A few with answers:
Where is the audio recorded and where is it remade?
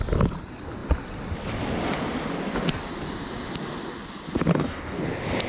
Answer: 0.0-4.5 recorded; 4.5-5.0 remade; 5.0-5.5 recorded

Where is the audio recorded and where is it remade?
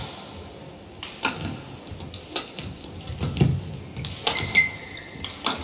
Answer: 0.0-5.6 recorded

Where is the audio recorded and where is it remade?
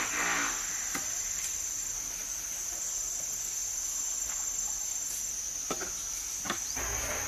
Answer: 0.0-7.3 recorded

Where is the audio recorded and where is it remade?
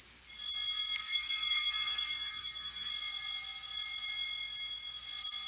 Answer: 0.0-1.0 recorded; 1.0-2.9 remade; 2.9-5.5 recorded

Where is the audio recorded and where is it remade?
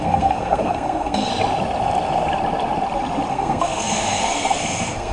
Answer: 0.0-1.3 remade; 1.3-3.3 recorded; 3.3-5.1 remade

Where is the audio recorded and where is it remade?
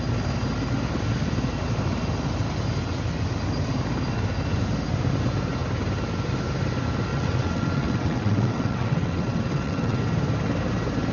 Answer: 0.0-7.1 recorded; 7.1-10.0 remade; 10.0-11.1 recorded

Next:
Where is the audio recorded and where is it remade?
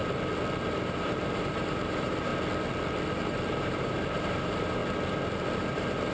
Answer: 0.0-0.6 recorded; 0.6-2.3 remade; 2.3-3.1 recorded; 3.1-4.8 remade; 4.8-5.6 recorded; 5.6-6.1 remade